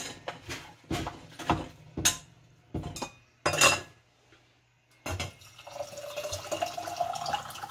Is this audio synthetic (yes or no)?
no